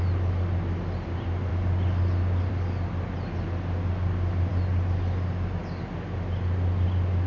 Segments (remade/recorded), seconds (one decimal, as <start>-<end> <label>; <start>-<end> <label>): 0.0-7.3 recorded